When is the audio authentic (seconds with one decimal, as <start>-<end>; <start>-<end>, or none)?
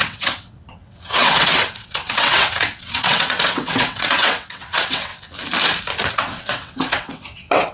5.1-6.1